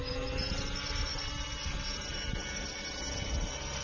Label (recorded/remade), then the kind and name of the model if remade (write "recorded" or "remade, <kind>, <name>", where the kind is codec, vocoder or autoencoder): recorded